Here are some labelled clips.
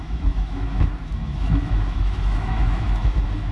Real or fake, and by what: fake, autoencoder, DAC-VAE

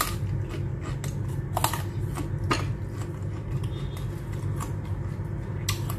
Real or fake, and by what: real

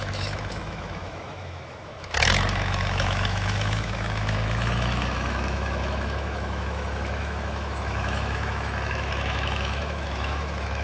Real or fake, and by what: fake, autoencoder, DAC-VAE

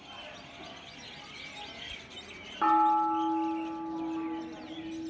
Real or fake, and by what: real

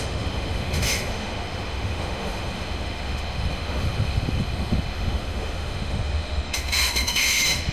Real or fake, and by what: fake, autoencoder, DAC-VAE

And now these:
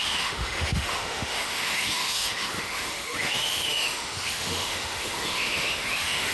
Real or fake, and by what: fake, autoencoder, DAC-VAE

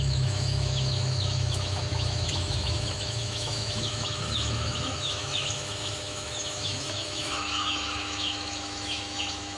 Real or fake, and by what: fake, autoencoder, DAC-VAE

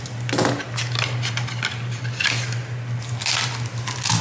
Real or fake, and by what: real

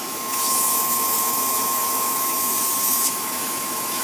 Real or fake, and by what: fake, autoencoder, DAC-VAE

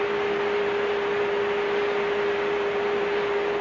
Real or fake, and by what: real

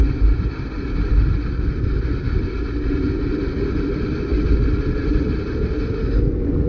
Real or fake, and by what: real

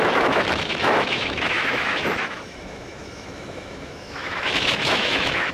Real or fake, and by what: fake, autoencoder, DAC-VAE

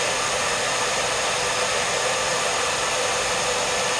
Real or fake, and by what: real